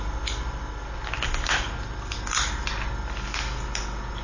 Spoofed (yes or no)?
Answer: no